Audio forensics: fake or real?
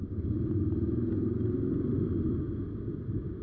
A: real